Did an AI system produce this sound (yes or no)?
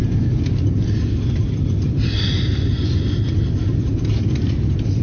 no